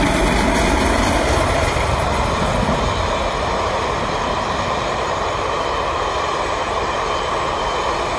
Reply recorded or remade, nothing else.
recorded